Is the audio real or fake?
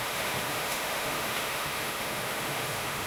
fake